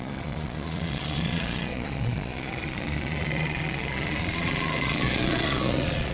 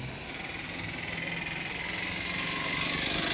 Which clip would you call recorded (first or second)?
second